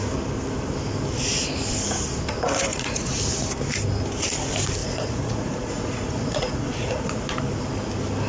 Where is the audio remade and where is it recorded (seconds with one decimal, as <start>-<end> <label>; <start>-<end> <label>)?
0.0-2.7 recorded; 2.7-3.2 remade; 3.2-4.8 recorded; 4.8-7.2 remade; 7.2-8.3 recorded